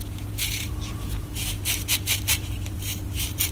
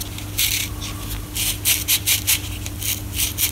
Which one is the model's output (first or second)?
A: first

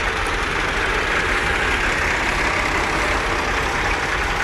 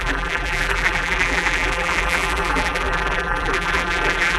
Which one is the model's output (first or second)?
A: second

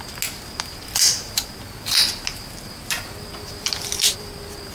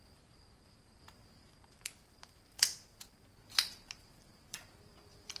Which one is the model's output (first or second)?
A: second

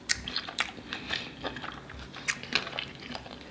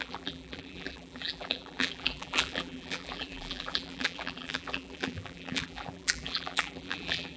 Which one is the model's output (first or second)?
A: second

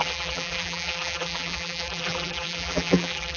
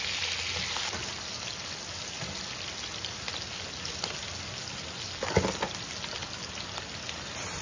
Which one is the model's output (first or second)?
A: first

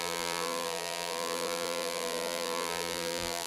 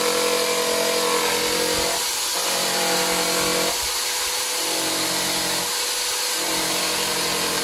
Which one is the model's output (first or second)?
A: first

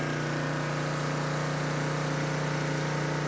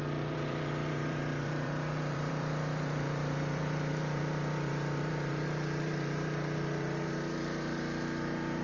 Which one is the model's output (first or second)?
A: second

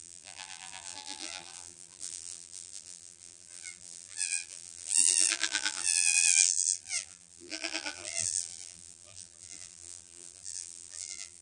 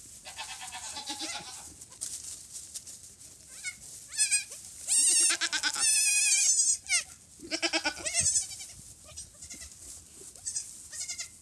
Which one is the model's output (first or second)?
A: first